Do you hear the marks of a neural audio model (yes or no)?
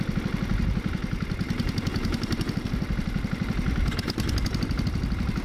no